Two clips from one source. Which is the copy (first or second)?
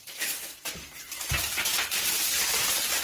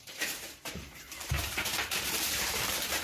second